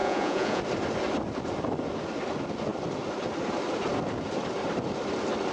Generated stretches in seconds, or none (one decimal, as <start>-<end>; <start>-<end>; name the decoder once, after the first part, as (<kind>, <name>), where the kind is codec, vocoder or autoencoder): 0.0-0.6 (vocoder, Vocos)